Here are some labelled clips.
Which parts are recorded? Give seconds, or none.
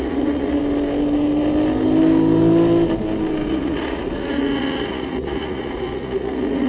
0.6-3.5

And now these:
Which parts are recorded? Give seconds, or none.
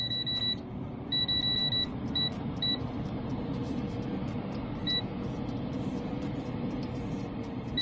0.0-7.8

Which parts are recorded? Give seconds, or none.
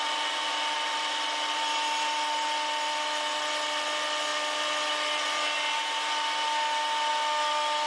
0.0-7.9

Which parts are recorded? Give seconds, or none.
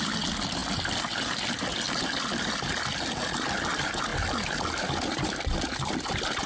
0.0-6.5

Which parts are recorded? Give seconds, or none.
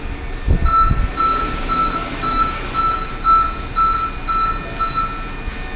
0.0-1.8; 3.1-5.8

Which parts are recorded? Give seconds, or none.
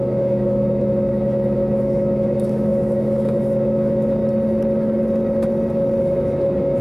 4.2-6.0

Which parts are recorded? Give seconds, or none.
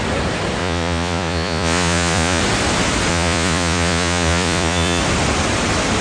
0.0-0.6; 2.4-3.1; 5.0-6.0